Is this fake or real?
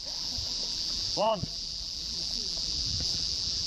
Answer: fake